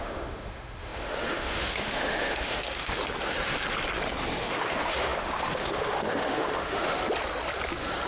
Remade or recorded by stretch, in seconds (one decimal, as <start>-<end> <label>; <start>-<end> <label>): 0.0-3.0 remade; 3.0-4.4 recorded; 4.4-7.0 remade; 7.0-8.1 recorded

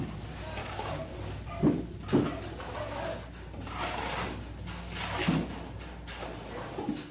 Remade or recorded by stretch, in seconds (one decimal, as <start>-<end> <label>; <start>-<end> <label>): 0.0-0.6 recorded; 0.6-1.1 remade; 1.1-7.1 recorded

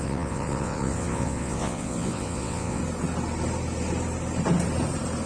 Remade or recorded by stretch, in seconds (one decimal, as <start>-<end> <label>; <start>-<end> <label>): 0.0-2.8 remade; 2.8-5.3 recorded